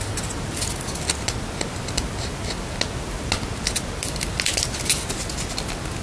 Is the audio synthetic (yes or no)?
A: no